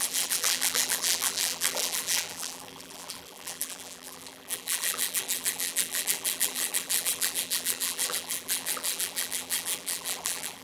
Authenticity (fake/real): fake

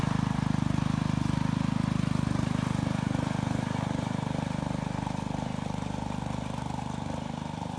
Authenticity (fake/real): real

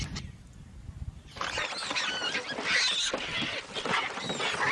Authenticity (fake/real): real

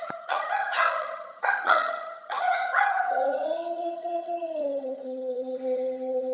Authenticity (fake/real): fake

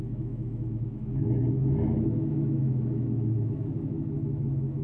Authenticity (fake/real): fake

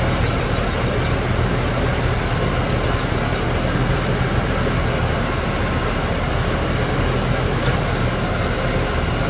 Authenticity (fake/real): real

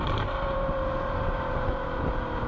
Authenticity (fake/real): fake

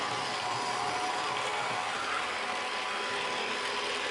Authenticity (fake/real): real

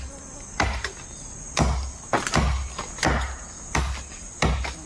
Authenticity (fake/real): real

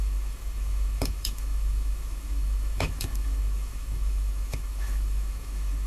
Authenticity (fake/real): fake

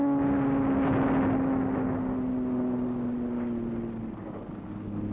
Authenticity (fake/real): real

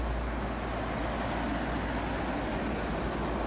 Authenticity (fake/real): real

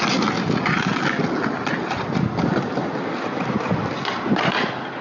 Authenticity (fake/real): real